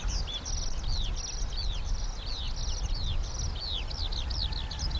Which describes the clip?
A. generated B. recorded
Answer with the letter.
B